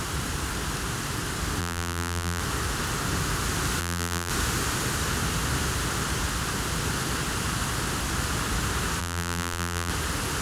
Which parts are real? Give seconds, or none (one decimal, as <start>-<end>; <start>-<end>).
0.0-1.6; 2.4-3.8; 4.3-9.0; 9.9-10.4